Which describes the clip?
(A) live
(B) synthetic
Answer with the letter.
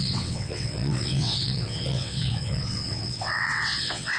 B